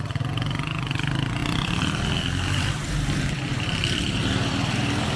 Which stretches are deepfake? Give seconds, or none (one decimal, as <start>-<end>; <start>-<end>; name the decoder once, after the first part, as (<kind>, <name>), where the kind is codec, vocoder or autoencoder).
1.4-4.5 (vocoder, BigVGAN v2)